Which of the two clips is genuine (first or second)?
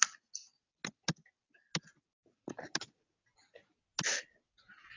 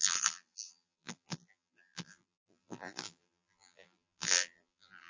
first